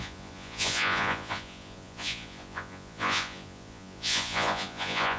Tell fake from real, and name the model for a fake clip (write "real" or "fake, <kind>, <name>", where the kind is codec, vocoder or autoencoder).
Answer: fake, vocoder, Vocos